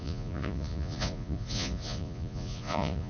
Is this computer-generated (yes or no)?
yes